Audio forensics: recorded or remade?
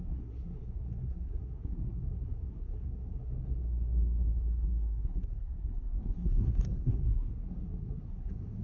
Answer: remade